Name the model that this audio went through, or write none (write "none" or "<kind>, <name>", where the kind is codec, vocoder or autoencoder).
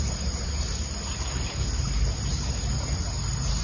none